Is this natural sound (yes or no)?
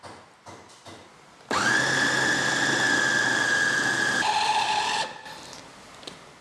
yes